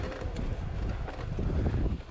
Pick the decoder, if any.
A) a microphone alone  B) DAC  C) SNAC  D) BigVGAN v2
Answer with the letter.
A